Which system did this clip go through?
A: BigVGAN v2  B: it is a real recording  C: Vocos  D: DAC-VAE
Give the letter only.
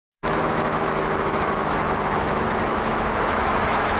D